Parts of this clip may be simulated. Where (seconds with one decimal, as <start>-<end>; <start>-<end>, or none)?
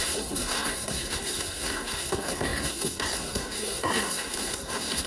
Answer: 0.0-5.1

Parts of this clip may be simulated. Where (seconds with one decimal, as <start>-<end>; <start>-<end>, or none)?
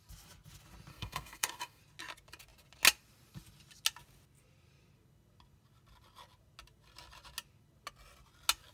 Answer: 0.9-1.8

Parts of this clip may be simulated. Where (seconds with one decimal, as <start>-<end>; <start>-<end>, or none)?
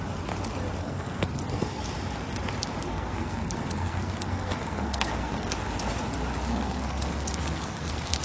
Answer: 0.8-1.8; 2.9-5.5; 6.5-8.2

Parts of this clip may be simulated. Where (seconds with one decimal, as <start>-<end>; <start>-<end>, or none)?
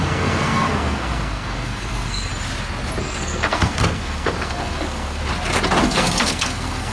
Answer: 0.0-2.3; 3.0-5.2; 5.8-6.9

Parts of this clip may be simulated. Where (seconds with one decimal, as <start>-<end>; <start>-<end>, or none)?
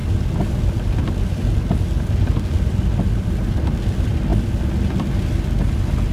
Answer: none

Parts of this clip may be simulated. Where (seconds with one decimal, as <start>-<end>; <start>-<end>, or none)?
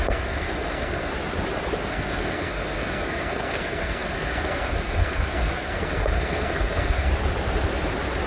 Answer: 0.0-1.1; 1.9-7.1